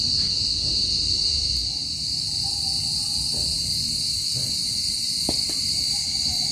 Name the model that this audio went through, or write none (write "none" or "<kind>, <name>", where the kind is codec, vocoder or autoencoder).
none